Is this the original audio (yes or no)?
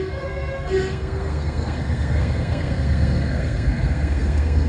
no